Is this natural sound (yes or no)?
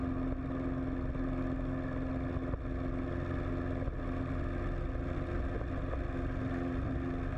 yes